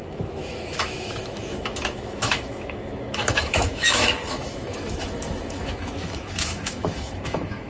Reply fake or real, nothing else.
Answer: fake